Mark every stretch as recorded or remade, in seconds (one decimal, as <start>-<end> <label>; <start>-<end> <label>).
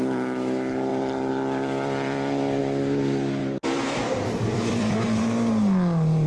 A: 0.0-0.9 recorded; 0.9-2.6 remade; 2.6-3.4 recorded; 3.4-5.0 remade; 5.0-6.3 recorded